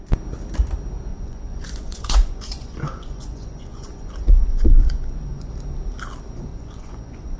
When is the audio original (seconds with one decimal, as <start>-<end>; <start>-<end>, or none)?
0.0-1.1; 5.5-6.5